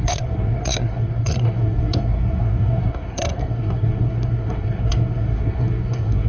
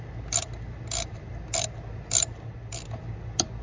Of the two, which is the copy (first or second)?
first